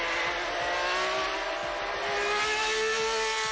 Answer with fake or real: real